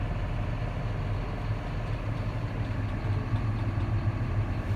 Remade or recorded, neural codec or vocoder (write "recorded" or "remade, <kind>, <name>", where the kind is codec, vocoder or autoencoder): recorded